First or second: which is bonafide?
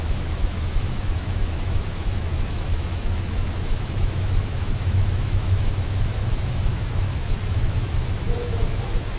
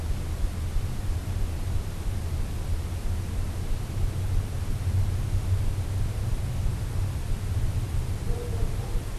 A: second